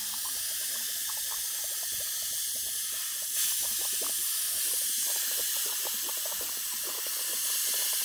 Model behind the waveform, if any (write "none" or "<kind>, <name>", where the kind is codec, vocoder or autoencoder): none